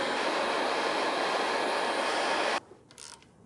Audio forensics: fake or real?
real